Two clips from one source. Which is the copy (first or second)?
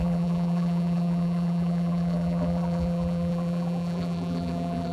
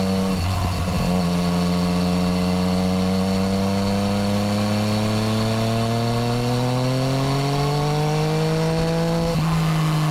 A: first